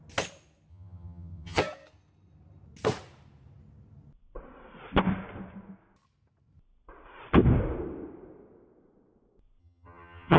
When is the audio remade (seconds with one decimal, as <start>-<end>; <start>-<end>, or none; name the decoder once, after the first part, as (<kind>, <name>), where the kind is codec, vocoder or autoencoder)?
0.7-1.6 (vocoder, HiFi-GAN); 9.6-10.4